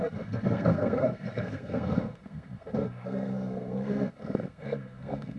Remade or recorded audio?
remade